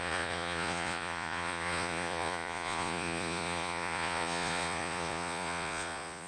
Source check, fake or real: fake